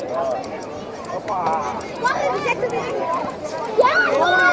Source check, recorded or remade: recorded